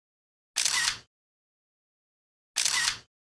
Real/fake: real